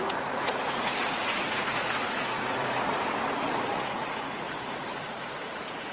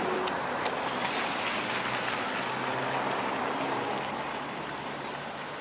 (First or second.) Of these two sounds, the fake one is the first